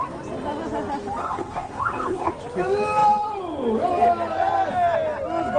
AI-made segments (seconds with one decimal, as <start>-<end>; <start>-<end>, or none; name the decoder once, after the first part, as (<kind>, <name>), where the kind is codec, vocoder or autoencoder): 1.2-2.3 (codec, SNAC)